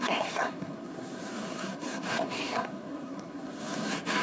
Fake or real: fake